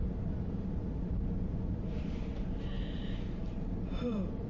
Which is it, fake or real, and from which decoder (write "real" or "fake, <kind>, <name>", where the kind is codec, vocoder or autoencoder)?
fake, vocoder, BigVGAN v2